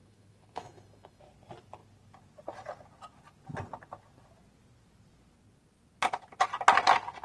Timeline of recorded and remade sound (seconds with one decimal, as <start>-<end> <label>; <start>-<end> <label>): 0.0-1.2 remade; 1.2-7.2 recorded